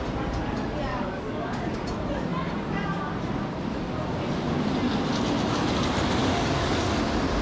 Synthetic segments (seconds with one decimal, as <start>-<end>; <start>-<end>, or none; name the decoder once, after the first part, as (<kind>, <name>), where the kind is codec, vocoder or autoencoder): 0.9-1.8 (codec, DAC); 6.2-6.8